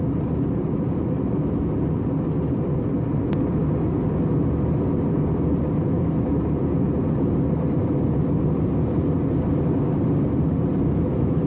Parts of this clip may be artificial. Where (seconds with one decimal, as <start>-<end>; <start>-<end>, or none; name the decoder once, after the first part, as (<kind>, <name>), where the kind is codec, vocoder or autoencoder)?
none